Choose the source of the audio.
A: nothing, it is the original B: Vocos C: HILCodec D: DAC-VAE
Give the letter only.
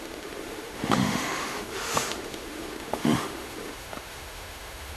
D